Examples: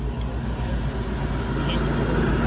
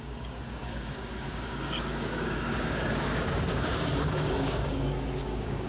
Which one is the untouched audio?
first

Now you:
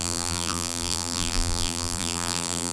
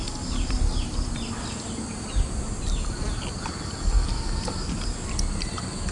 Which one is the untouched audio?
second